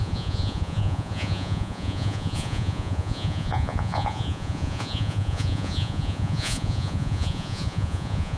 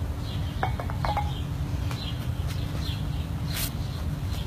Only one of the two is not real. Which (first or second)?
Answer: first